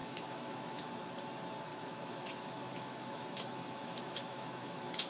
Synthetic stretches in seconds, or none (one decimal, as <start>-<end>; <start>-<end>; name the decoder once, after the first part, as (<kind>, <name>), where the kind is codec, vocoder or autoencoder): 0.0-0.9 (autoencoder, DAC-VAE); 1.7-5.1